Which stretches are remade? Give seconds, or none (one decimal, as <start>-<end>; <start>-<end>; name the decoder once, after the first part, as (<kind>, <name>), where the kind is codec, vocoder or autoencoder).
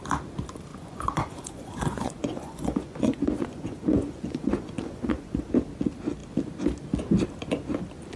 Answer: 0.7-5.5 (vocoder, Vocos)